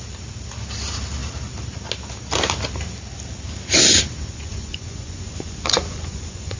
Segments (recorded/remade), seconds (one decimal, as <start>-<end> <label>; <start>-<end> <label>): 0.0-4.3 recorded; 4.3-6.6 remade